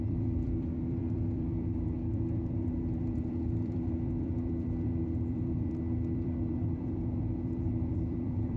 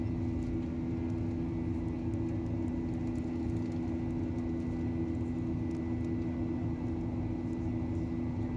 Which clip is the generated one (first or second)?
first